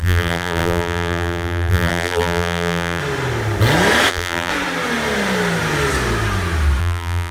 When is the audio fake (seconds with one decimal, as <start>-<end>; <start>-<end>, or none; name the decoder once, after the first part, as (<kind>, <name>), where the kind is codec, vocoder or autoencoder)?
0.0-3.0 (vocoder, BigVGAN v2); 4.1-4.5; 6.8-7.3